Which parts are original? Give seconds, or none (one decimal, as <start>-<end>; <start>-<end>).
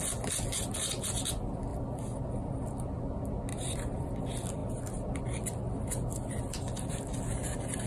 0.0-1.7; 3.0-3.5; 4.1-7.9